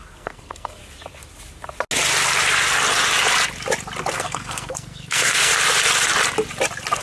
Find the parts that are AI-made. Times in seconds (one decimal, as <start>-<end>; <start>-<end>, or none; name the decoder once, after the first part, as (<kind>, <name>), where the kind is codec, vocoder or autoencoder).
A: 0.0-0.8 (codec, SNAC); 4.1-5.5